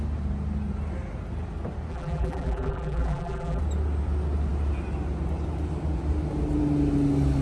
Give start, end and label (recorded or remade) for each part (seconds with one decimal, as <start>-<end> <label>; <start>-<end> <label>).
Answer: 0.0-1.9 recorded; 1.9-3.6 remade; 3.6-7.4 recorded